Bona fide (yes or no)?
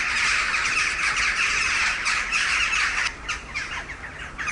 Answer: yes